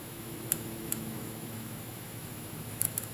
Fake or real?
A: fake